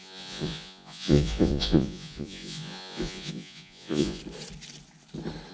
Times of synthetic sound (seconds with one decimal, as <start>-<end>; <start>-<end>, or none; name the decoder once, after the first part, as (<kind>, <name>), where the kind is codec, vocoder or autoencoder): 0.0-4.2 (vocoder, Vocos)